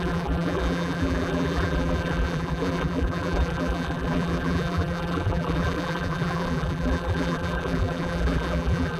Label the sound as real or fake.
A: fake